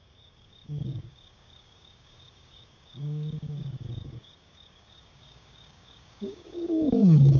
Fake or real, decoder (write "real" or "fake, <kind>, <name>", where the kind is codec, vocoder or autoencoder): fake, codec, DAC